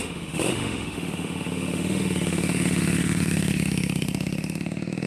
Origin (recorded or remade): remade